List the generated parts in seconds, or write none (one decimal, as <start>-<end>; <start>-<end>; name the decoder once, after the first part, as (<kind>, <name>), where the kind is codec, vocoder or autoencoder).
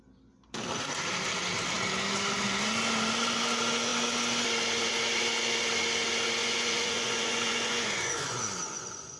6.4-9.2 (vocoder, Vocos)